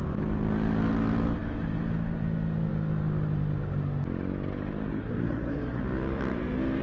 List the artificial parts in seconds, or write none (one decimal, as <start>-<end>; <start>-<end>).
4.9-5.8